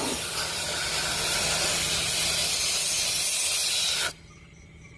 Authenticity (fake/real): real